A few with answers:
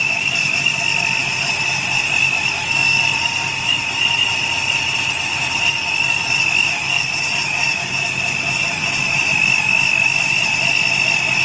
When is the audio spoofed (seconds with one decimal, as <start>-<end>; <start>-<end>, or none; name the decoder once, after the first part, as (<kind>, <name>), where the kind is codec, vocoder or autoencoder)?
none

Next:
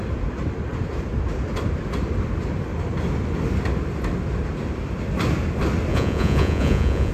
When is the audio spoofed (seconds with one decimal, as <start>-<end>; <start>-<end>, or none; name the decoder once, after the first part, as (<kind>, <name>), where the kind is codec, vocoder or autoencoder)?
5.9-7.1 (vocoder, Vocos)

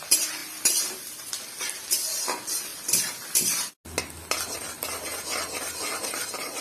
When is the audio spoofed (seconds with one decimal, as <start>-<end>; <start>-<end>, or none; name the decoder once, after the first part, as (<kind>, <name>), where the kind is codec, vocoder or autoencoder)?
0.4-1.3 (vocoder, BigVGAN v2); 2.7-3.7